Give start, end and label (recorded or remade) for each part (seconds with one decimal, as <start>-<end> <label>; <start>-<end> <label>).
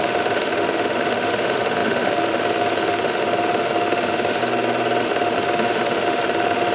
0.0-4.4 remade; 4.4-5.0 recorded; 5.0-6.7 remade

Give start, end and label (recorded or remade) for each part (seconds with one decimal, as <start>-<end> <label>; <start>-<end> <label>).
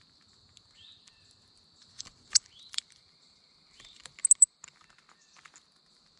0.0-1.8 recorded; 1.8-4.0 remade; 4.0-6.2 recorded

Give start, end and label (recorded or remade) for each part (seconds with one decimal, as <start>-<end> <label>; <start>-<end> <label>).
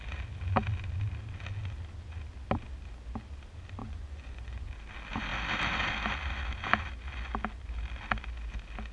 0.0-3.8 recorded; 3.8-4.7 remade; 4.7-8.9 recorded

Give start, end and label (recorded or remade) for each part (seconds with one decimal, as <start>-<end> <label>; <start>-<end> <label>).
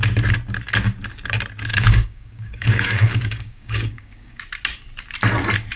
0.0-1.7 recorded; 1.7-4.4 remade; 4.4-5.8 recorded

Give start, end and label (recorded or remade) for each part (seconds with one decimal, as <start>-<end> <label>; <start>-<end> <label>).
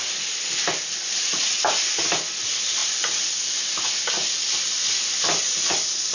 0.0-2.8 recorded; 2.8-3.3 remade; 3.3-4.2 recorded; 4.2-5.4 remade; 5.4-6.1 recorded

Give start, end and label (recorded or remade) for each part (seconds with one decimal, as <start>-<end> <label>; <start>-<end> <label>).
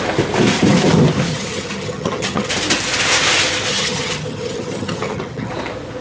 0.0-1.3 recorded; 1.3-2.5 remade; 2.5-3.7 recorded; 3.7-5.5 remade; 5.5-6.0 recorded